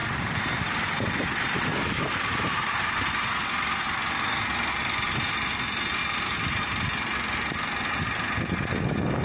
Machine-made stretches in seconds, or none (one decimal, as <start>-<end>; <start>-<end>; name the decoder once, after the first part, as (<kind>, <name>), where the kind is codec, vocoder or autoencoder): 0.0-0.6 (vocoder, BigVGAN v2); 1.7-2.6; 6.0-6.6